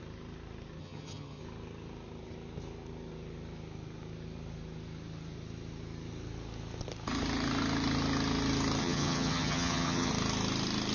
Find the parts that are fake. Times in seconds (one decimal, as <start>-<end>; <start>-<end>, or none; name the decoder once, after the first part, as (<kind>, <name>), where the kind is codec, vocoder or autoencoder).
0.8-1.4 (vocoder, HiFi-GAN); 8.8-10.1